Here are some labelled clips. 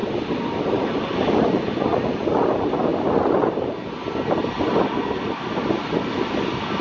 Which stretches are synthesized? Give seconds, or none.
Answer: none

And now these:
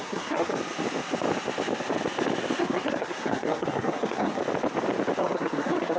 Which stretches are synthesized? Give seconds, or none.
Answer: 0.0-0.5 (codec, SNAC); 2.6-4.4; 5.2-6.0

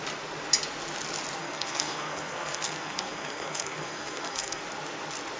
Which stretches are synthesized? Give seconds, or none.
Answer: 1.4-4.6 (codec, SNAC)